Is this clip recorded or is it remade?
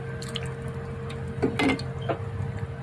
recorded